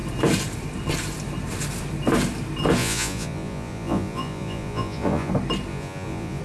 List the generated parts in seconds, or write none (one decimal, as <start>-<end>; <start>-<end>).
2.8-5.3; 5.7-6.4